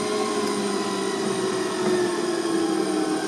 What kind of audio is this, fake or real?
real